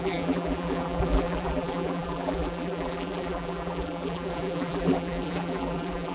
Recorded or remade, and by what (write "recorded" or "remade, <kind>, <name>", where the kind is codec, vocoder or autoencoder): remade, vocoder, BigVGAN v2